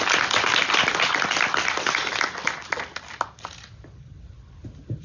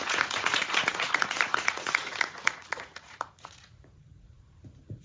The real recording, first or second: first